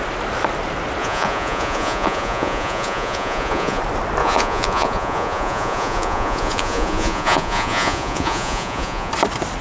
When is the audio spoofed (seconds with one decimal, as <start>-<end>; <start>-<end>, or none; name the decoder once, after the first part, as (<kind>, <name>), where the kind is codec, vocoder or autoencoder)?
1.0-3.8 (vocoder, Vocos); 4.2-9.1

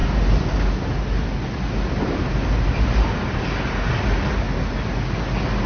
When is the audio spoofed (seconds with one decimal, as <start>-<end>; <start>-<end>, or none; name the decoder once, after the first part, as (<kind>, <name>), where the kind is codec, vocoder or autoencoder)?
none